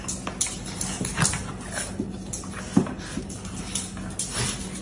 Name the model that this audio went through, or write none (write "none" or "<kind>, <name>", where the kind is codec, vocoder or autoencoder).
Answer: none